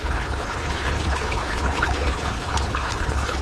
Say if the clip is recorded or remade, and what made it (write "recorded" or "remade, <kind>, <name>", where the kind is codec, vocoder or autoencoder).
remade, codec, HILCodec